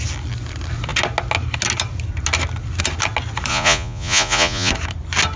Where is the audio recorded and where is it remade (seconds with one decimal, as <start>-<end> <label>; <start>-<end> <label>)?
0.0-3.5 recorded; 3.5-4.7 remade; 4.7-5.4 recorded